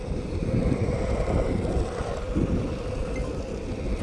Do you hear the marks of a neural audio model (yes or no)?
no